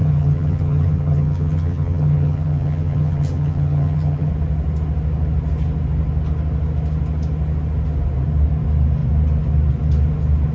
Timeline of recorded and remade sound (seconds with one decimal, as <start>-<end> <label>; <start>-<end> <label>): 0.0-4.3 remade; 4.3-10.5 recorded